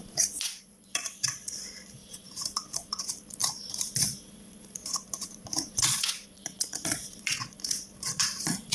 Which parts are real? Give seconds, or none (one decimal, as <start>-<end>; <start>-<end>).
none